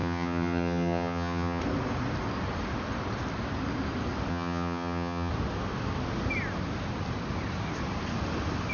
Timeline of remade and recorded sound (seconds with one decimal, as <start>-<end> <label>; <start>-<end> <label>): 0.0-1.6 remade; 1.6-4.3 recorded; 4.3-5.3 remade; 5.3-8.7 recorded